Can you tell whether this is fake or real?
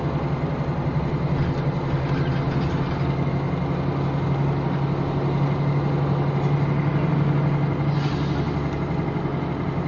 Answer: real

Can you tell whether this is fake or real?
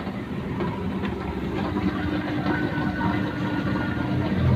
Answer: real